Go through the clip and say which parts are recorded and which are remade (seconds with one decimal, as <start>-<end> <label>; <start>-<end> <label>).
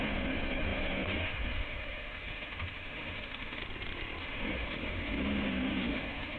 0.0-3.6 remade; 3.6-4.2 recorded; 4.2-6.4 remade